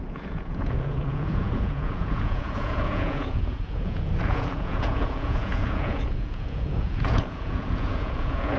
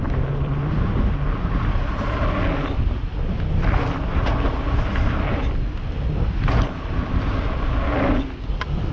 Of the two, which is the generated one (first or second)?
first